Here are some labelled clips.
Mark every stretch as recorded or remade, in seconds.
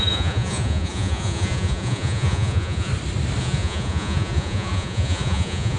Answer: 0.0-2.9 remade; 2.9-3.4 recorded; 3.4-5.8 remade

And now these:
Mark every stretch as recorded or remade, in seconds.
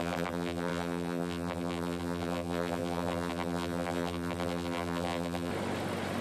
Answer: 0.0-5.5 remade; 5.5-6.2 recorded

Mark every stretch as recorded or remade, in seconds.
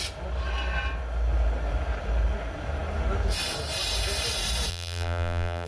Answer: 0.0-4.7 recorded; 4.7-5.7 remade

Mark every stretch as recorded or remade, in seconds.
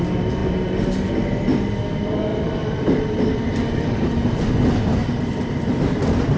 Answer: 0.0-2.3 recorded; 2.3-3.4 remade; 3.4-5.0 recorded; 5.0-6.0 remade; 6.0-6.4 recorded